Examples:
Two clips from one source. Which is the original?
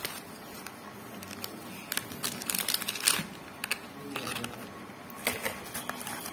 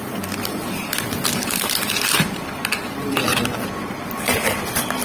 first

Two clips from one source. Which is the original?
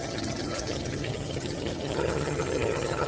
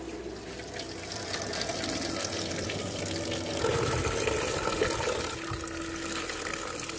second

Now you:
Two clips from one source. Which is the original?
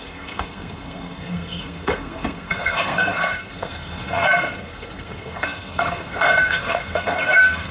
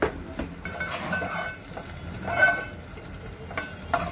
second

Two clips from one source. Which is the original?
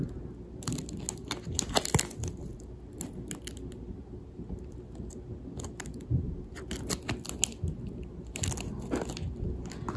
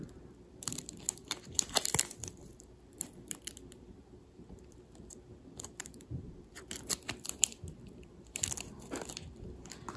first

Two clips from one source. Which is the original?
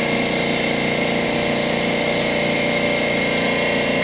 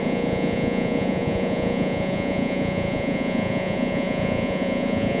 first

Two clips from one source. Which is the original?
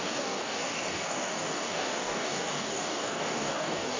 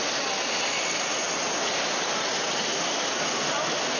second